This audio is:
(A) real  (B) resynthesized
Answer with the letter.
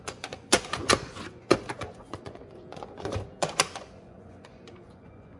B